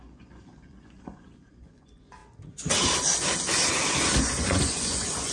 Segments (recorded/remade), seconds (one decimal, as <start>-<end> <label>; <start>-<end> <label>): 0.0-2.2 remade; 2.2-4.2 recorded; 4.2-5.3 remade